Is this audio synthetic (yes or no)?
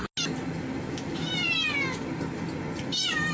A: no